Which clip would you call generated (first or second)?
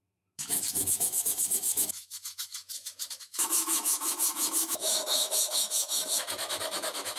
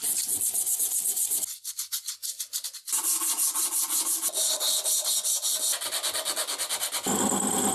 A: first